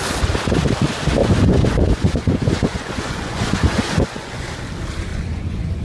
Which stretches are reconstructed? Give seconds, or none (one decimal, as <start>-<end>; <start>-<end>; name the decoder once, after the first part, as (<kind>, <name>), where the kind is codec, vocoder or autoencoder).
1.2-4.4 (vocoder, Vocos); 5.1-5.8

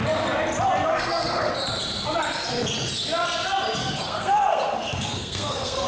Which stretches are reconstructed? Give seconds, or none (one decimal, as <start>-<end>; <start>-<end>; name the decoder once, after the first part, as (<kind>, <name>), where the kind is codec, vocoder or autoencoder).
0.9-1.5 (codec, SNAC); 3.8-5.9

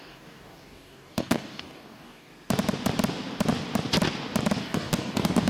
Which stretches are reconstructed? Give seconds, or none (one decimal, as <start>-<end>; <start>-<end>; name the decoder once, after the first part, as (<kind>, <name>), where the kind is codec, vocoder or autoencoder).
0.0-2.3 (codec, DAC); 4.6-5.5